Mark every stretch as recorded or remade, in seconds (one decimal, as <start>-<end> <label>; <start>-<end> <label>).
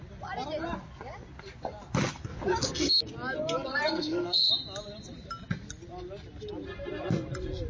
0.0-3.7 recorded; 3.7-4.5 remade; 4.5-7.7 recorded